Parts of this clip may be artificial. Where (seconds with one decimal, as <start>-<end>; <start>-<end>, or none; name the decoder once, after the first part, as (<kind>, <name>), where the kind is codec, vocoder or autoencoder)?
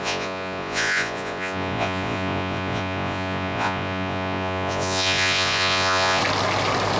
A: 0.0-6.2 (vocoder, Vocos)